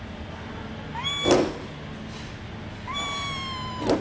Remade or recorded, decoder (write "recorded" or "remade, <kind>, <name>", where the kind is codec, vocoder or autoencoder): recorded